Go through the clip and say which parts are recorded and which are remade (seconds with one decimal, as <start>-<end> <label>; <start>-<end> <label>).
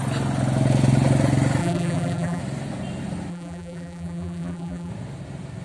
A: 0.0-1.6 recorded; 1.6-2.4 remade; 2.4-3.3 recorded; 3.3-4.9 remade; 4.9-5.6 recorded